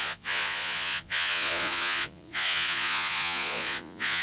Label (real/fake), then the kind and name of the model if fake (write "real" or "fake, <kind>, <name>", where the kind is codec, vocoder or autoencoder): fake, vocoder, Vocos